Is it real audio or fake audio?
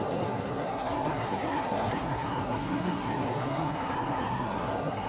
fake